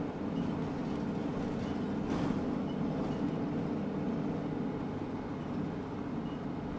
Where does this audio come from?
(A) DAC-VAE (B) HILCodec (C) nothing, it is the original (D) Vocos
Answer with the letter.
C